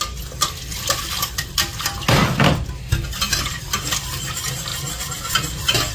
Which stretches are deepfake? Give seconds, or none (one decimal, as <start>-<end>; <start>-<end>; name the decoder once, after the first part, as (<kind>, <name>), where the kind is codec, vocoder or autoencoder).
0.7-1.8 (vocoder, BigVGAN v2); 4.7-5.9